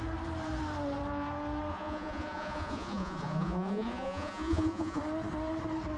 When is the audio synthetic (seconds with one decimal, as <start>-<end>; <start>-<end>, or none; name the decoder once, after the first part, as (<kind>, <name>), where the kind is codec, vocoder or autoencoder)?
1.7-5.0 (vocoder, Vocos)